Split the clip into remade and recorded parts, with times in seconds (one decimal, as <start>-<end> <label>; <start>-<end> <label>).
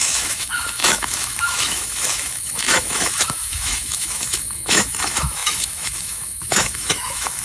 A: 0.0-7.4 remade